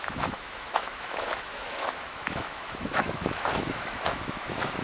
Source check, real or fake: fake